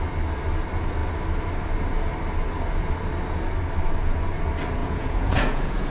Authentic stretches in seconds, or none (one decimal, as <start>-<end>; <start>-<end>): 0.0-4.8